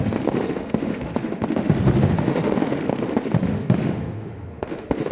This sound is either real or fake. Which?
fake